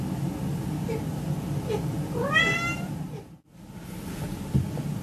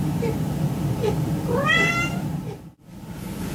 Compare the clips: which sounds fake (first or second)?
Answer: second